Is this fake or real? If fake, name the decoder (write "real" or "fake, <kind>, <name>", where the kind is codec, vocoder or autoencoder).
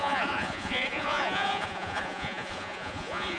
fake, vocoder, Vocos